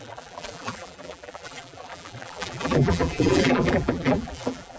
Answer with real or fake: fake